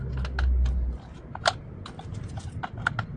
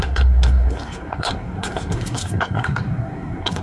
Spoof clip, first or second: second